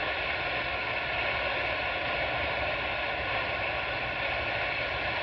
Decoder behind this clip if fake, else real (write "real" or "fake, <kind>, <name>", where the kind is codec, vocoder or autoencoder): real